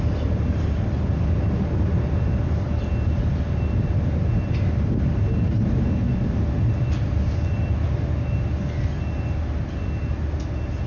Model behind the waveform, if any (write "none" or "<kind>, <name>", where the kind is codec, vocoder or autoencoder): none